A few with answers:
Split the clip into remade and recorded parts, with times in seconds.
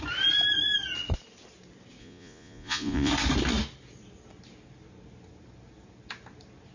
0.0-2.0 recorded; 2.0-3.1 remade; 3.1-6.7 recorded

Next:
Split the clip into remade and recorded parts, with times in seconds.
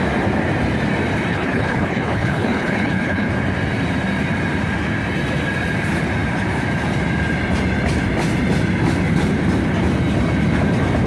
0.0-1.3 recorded; 1.3-3.3 remade; 3.3-11.1 recorded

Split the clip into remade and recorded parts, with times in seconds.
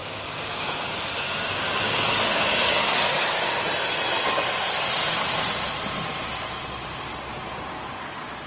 0.0-3.6 remade; 3.6-8.5 recorded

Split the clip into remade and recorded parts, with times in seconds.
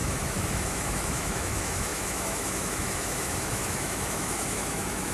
0.0-5.1 remade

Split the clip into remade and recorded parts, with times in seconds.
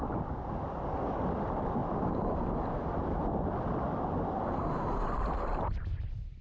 0.0-6.4 recorded